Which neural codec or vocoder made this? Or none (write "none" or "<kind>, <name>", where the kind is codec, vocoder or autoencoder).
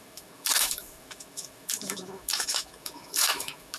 autoencoder, DAC-VAE